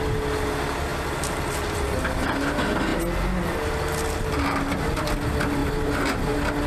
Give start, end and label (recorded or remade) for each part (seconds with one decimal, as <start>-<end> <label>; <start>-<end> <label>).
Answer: 0.0-6.7 recorded